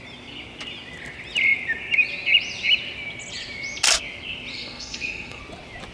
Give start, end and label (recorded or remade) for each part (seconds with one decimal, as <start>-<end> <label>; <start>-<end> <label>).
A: 0.0-4.5 recorded; 4.5-5.4 remade; 5.4-5.9 recorded